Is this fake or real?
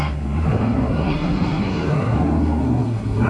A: fake